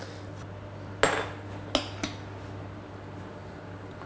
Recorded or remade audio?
recorded